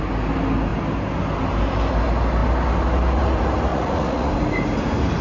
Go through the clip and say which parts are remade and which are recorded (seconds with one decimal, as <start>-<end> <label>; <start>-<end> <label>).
0.0-3.7 recorded; 3.7-4.3 remade; 4.3-5.2 recorded